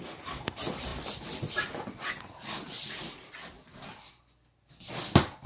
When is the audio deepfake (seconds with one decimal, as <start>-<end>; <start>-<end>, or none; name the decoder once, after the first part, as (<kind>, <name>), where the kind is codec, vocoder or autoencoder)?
0.9-4.2 (vocoder, BigVGAN v2)